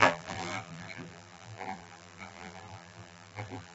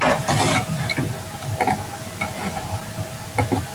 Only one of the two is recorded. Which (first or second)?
second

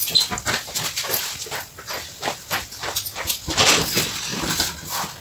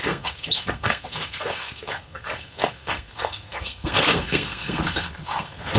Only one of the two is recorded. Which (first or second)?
first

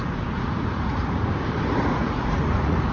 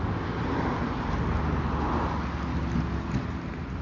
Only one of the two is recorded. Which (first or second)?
second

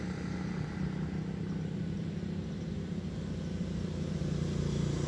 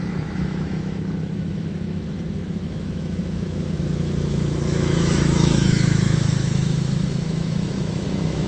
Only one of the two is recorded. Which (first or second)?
first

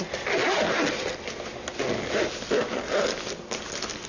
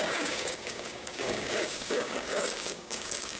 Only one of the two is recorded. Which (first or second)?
first